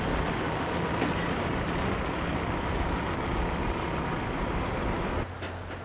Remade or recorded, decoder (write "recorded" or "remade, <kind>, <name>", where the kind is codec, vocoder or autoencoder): recorded